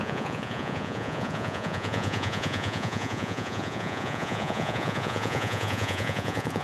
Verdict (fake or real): fake